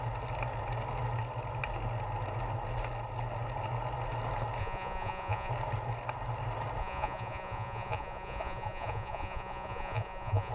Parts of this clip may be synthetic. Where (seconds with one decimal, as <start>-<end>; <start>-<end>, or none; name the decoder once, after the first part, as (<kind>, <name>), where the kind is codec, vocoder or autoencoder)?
4.6-5.5 (vocoder, Vocos); 6.8-10.5